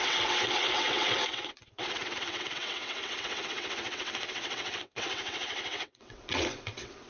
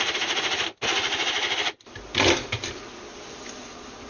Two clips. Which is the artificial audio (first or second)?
first